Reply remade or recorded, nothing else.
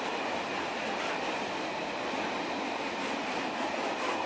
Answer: recorded